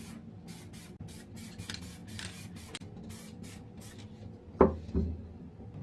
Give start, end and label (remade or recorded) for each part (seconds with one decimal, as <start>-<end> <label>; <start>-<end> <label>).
0.0-5.8 recorded